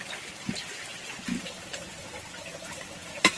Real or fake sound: real